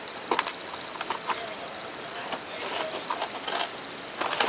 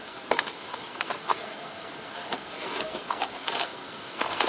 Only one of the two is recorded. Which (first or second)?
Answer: first